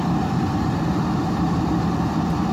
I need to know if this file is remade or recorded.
remade